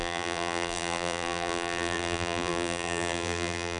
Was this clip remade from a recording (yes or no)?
yes